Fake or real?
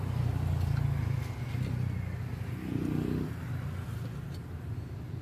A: real